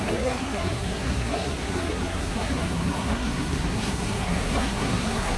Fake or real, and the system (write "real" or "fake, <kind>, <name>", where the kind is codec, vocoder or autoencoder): fake, codec, SNAC